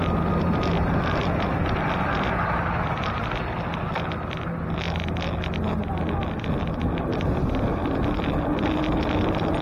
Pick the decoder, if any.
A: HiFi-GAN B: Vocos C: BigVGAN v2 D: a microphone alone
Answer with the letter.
D